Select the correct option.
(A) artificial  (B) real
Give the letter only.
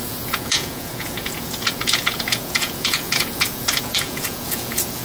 A